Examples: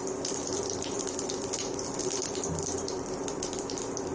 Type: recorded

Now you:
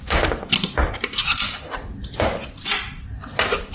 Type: recorded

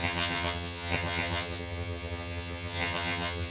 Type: remade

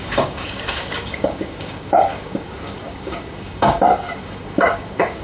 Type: remade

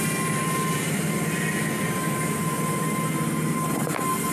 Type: recorded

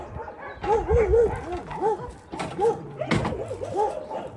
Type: recorded